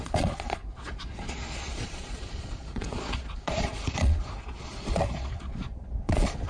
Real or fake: fake